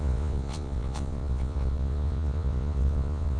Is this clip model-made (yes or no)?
yes